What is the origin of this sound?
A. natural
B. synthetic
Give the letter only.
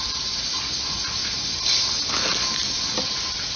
A